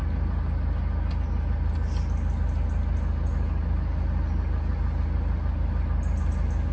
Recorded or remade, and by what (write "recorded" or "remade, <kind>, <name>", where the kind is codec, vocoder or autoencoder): recorded